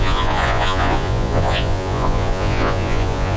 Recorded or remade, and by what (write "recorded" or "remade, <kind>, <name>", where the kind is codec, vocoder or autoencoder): remade, vocoder, Vocos